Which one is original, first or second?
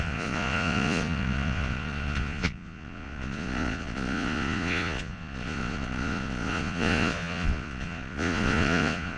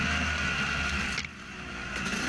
second